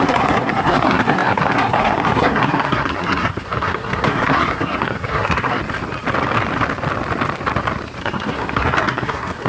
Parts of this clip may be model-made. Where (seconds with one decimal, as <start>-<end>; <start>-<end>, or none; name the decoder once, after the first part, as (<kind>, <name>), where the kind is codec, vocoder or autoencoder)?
0.0-5.6 (codec, SNAC); 8.0-9.5